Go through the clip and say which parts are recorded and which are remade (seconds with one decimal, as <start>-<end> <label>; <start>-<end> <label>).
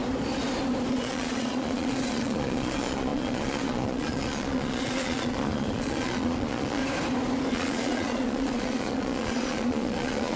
0.0-0.9 recorded; 0.9-6.8 remade; 6.8-7.5 recorded; 7.5-10.4 remade